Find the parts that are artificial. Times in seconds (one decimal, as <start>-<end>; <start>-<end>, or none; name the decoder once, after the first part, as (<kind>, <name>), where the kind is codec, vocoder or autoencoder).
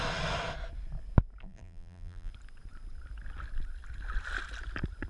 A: 1.4-2.3 (vocoder, BigVGAN v2)